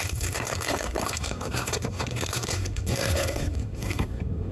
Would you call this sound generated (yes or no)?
yes